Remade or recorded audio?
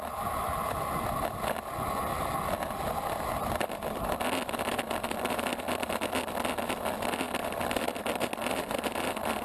recorded